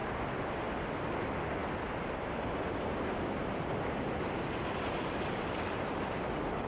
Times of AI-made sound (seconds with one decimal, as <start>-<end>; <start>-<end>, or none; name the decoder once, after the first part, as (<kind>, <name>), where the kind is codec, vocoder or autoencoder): none